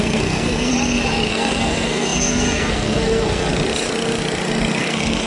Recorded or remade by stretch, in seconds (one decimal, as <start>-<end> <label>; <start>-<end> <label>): 0.0-0.7 remade; 0.7-1.3 recorded; 1.3-3.5 remade; 3.5-4.8 recorded; 4.8-5.3 remade